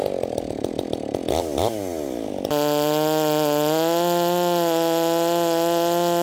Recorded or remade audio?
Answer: recorded